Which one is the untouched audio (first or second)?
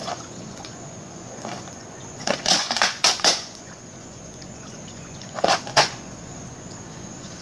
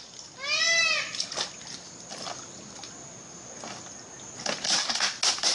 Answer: second